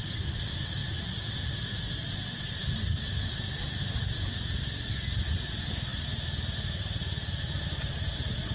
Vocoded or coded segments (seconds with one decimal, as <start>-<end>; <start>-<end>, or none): none